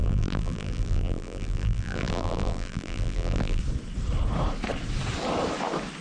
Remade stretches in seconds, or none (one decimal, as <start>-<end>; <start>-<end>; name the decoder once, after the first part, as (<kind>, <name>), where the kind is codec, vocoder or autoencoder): 0.0-3.6 (vocoder, BigVGAN v2)